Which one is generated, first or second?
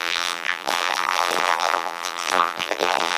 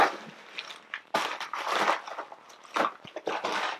first